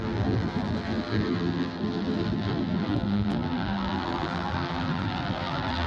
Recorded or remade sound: remade